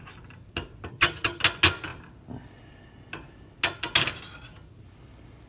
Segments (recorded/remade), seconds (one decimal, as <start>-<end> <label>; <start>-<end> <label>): 0.0-0.9 recorded; 0.9-1.4 remade; 1.4-5.5 recorded

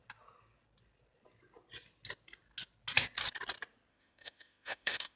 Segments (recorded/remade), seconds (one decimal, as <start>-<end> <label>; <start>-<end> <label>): 0.0-3.9 recorded; 3.9-5.2 remade

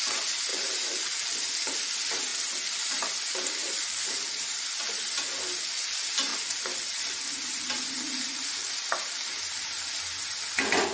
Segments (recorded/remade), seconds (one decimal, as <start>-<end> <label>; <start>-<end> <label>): 0.0-0.5 recorded; 0.5-1.4 remade; 1.4-3.6 recorded; 3.6-4.7 remade; 4.7-6.3 recorded; 6.3-8.7 remade; 8.7-10.9 recorded

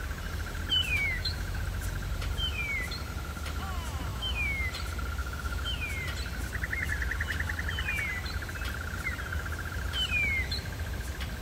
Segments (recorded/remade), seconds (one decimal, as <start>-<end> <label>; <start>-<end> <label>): 0.0-0.9 recorded; 0.9-1.6 remade; 1.6-4.1 recorded; 4.1-4.7 remade; 4.7-5.2 recorded; 5.2-5.9 remade; 5.9-11.4 recorded

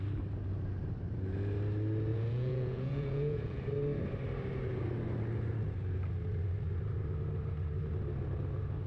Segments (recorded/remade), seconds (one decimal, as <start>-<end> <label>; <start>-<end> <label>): 0.0-2.1 recorded; 2.1-3.6 remade; 3.6-8.9 recorded

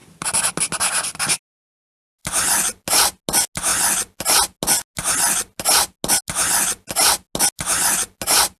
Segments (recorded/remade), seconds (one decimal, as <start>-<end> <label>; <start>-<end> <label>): 0.0-8.6 recorded

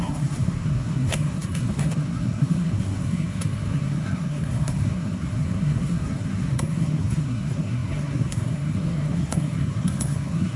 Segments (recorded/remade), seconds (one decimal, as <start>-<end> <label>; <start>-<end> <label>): 0.0-10.6 remade

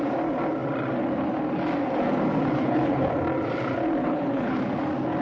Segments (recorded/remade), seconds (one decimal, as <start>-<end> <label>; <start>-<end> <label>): 0.0-2.5 recorded; 2.5-3.1 remade; 3.1-4.0 recorded; 4.0-4.6 remade; 4.6-5.2 recorded